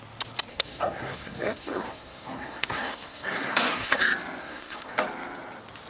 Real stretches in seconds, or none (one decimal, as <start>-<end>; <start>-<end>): 0.0-0.5; 4.0-4.4; 5.0-5.9